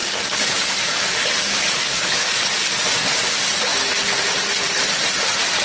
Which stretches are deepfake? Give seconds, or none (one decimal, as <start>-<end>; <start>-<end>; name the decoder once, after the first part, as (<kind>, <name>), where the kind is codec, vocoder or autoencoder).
0.0-2.5 (codec, DAC)